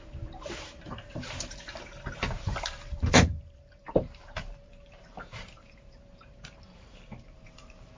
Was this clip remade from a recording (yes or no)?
yes